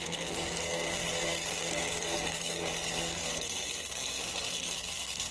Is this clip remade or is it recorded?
remade